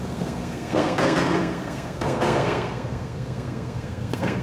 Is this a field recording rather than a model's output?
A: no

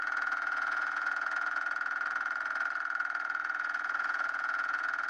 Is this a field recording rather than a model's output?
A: no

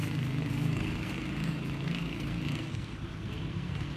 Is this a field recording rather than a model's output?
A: no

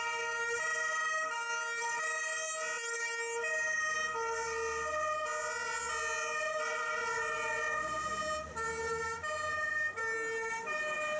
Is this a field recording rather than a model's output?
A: yes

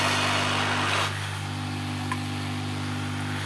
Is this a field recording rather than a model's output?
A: yes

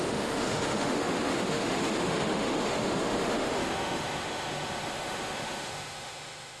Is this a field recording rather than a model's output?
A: no